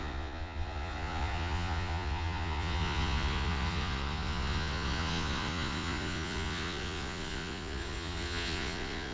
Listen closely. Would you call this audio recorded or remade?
remade